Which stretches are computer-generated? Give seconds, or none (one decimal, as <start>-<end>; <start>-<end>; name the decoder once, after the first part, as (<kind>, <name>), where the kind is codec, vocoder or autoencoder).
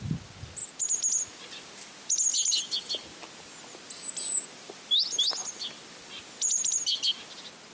none